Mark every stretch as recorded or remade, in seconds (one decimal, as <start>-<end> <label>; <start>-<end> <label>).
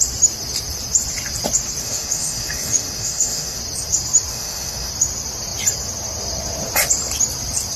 0.0-1.8 recorded; 1.8-3.6 remade; 3.6-4.3 recorded; 4.3-4.9 remade; 4.9-7.8 recorded